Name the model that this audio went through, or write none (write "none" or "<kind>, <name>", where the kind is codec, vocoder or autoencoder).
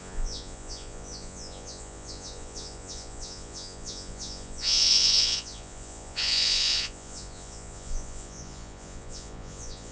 vocoder, Vocos